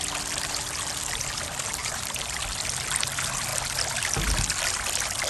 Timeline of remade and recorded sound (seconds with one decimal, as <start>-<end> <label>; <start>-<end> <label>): 0.0-1.8 recorded; 1.8-2.4 remade; 2.4-5.3 recorded